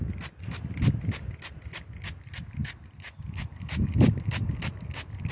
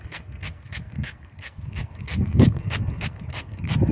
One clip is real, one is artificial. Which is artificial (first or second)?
second